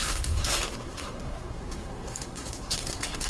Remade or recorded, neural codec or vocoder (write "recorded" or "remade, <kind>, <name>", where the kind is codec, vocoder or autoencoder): remade, codec, SNAC